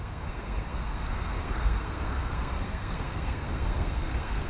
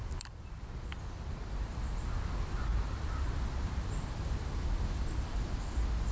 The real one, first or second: second